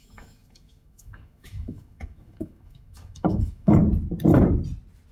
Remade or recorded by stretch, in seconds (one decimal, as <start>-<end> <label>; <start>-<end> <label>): 0.0-3.8 remade; 3.8-5.1 recorded